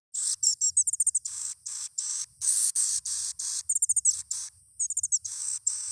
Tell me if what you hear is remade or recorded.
recorded